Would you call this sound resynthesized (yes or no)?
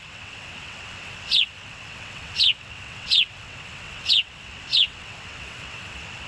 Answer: yes